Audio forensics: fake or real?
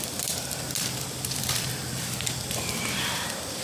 fake